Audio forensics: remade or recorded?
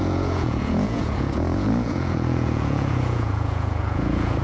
remade